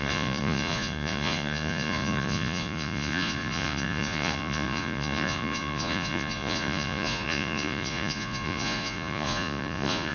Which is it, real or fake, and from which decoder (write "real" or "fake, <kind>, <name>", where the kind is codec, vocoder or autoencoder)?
fake, vocoder, Vocos